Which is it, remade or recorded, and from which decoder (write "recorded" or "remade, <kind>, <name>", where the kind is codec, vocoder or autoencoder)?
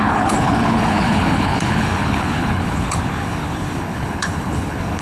remade, codec, HILCodec